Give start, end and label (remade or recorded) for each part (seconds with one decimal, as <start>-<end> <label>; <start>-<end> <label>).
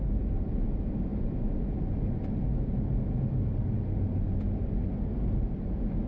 0.0-6.1 recorded